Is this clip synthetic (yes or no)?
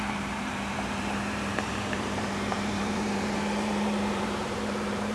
yes